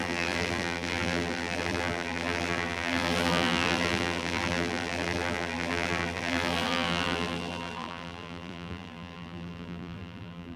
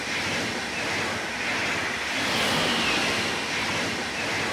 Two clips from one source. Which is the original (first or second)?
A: second